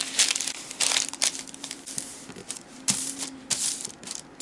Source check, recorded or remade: remade